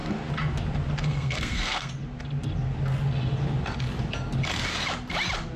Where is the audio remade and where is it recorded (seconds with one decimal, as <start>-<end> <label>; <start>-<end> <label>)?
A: 0.0-1.0 recorded; 1.0-1.9 remade; 1.9-5.6 recorded